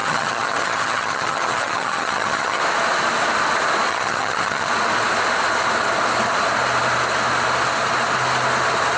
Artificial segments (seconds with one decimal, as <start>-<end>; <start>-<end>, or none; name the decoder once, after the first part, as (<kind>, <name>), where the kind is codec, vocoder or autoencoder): 0.0-2.6 (vocoder, HiFi-GAN); 3.9-4.7